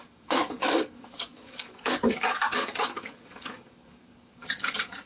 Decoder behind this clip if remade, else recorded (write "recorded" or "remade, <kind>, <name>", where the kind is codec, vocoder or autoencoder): remade, codec, DAC